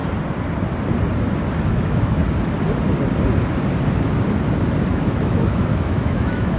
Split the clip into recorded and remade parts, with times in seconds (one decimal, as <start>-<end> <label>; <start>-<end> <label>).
0.0-1.7 recorded; 1.7-2.2 remade; 2.2-4.9 recorded; 4.9-6.6 remade